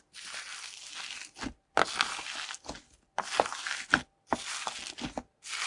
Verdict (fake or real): real